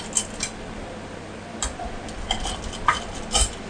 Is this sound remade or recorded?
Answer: recorded